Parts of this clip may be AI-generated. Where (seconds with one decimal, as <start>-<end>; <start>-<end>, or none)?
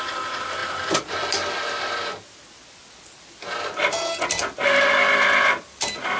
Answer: none